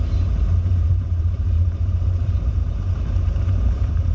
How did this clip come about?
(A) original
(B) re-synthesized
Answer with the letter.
B